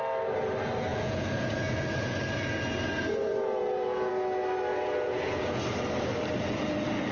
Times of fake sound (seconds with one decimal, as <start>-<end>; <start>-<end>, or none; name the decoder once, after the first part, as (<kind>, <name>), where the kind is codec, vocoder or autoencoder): 0.9-4.1 (vocoder, Vocos); 4.7-5.6

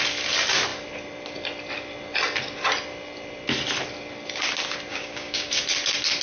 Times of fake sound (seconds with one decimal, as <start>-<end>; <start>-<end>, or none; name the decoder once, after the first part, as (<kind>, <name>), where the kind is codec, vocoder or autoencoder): 4.9-5.6 (codec, DAC)

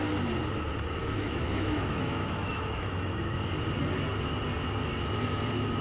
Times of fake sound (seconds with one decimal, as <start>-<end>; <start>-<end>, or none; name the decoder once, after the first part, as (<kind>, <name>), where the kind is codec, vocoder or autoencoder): 1.0-3.3 (autoencoder, DAC-VAE)

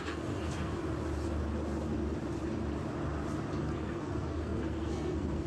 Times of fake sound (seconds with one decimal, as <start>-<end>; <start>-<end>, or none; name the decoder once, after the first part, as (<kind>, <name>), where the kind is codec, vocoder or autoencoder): 0.0-0.8 (codec, SNAC); 3.6-5.5

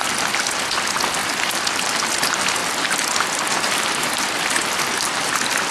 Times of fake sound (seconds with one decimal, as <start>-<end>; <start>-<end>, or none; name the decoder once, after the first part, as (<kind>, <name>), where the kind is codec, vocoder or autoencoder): none

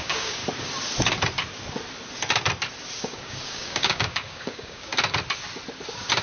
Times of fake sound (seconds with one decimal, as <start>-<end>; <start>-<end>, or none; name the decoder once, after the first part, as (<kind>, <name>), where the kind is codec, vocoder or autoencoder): 0.0-0.4 (codec, DAC); 3.0-4.9